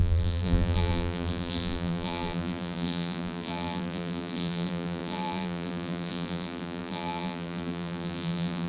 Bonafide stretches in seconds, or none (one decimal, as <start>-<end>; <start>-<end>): none